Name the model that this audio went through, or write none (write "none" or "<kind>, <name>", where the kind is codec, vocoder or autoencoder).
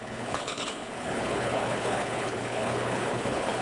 codec, HILCodec